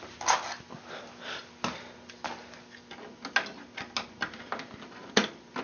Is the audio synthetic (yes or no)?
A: no